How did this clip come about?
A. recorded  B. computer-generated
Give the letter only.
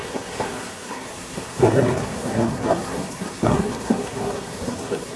B